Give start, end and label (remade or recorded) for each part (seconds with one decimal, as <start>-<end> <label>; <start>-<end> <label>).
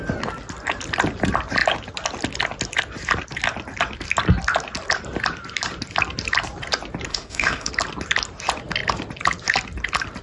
0.0-7.1 recorded; 7.1-7.7 remade; 7.7-10.2 recorded